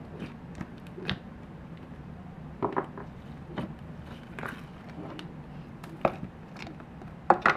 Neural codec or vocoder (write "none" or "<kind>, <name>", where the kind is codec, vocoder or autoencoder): vocoder, BigVGAN v2